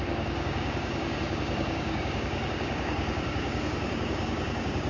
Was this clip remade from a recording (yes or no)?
yes